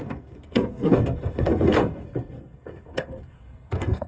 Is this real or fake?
fake